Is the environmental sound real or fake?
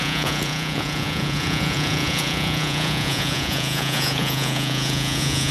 fake